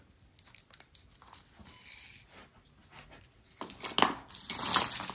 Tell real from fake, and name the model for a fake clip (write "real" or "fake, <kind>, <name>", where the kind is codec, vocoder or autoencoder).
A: real